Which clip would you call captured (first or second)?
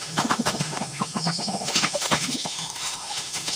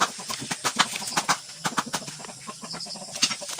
second